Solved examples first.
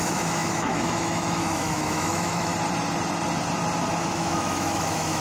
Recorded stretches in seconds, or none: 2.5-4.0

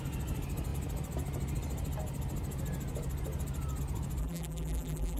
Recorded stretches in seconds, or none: 0.0-4.2

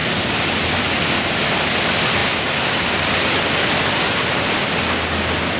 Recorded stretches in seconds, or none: 0.0-5.6

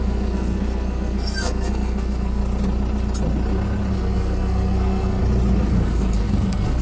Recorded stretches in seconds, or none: 2.4-3.9; 5.2-5.7